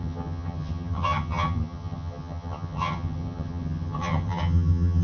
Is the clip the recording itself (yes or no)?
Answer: no